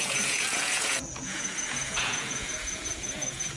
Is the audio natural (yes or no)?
no